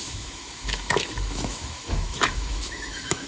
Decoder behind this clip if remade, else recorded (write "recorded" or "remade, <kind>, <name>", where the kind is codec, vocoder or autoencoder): remade, autoencoder, DAC-VAE